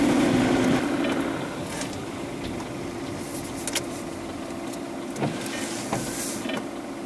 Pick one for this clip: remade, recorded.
recorded